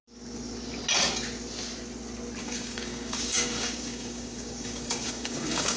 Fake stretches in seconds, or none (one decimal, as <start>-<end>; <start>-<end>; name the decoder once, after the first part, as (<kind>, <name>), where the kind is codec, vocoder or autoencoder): 2.4-5.8 (codec, DAC)